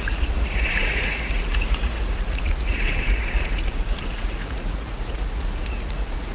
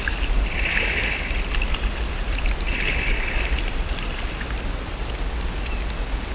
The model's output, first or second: first